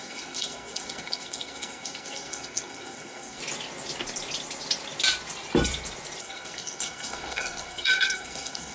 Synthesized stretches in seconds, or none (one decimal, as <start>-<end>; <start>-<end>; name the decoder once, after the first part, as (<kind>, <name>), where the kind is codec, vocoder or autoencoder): 0.0-3.4 (codec, SNAC); 6.2-8.7